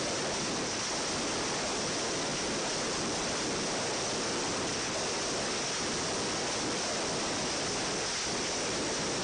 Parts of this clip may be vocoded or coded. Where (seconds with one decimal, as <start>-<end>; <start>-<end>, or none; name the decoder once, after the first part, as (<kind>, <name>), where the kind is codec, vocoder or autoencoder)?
none